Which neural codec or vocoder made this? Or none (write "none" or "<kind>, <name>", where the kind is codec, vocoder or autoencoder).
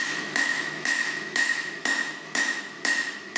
autoencoder, DAC-VAE